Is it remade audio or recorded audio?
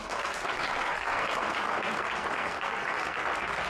remade